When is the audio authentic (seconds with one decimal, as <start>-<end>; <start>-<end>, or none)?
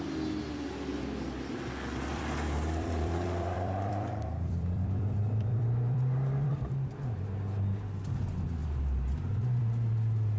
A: 0.0-2.1; 6.6-8.6; 9.6-10.4